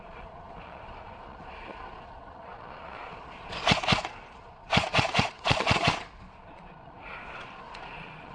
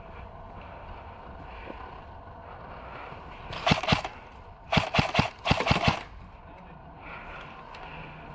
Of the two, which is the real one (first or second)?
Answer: second